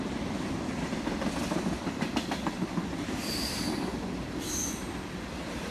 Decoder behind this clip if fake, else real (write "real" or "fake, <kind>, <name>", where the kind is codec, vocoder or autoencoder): real